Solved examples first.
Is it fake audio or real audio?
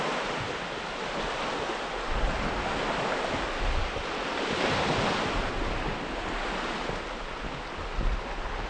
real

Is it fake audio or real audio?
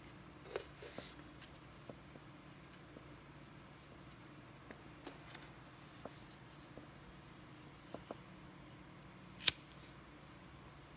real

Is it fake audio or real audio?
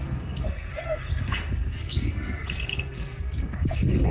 fake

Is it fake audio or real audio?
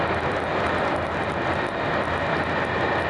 real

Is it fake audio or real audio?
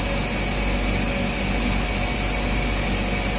real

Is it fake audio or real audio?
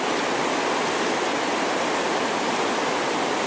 real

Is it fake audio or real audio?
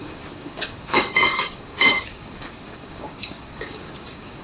fake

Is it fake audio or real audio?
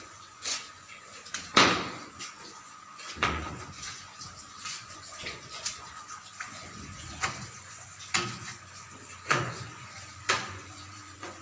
fake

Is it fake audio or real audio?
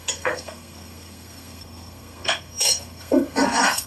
fake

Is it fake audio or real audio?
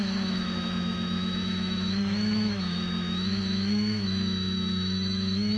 fake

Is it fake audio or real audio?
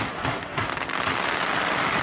real